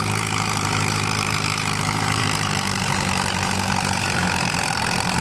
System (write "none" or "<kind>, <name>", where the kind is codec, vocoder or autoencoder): vocoder, BigVGAN v2